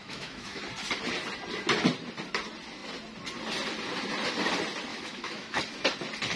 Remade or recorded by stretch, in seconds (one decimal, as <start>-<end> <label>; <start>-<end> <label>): 0.0-0.6 remade; 0.6-4.9 recorded; 4.9-5.6 remade; 5.6-6.4 recorded